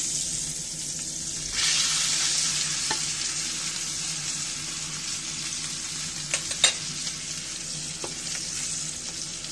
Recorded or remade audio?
recorded